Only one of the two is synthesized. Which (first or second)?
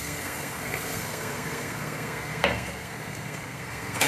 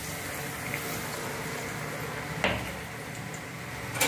first